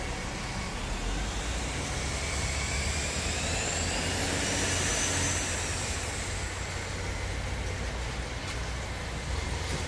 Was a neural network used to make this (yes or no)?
no